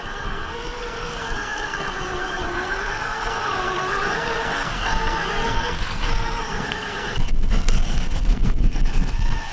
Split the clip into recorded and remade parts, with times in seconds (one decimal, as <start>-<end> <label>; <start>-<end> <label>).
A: 0.0-9.5 remade